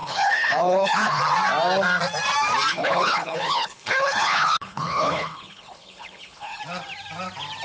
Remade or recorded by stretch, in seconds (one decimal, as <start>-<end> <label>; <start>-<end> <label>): 0.0-1.2 remade; 1.2-2.7 recorded; 2.7-6.6 remade; 6.6-7.6 recorded